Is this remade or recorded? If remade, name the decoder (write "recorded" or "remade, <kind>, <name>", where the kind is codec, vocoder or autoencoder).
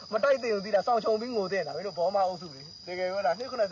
recorded